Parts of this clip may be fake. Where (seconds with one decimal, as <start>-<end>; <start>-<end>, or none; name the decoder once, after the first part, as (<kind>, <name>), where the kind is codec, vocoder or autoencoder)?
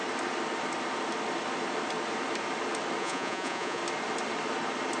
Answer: 3.0-3.8 (vocoder, Vocos)